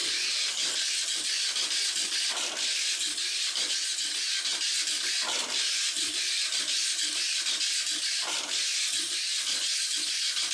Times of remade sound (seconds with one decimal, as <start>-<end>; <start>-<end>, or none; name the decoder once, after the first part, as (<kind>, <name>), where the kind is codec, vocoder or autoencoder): none